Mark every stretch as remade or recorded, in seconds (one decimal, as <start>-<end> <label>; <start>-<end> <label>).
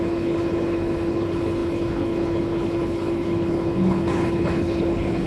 0.0-5.3 remade